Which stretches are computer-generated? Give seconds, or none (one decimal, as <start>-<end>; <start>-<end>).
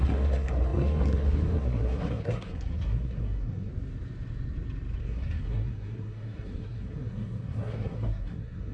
0.0-3.7; 5.0-8.7